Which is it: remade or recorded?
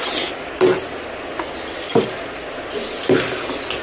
recorded